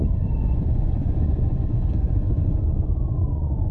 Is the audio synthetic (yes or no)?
yes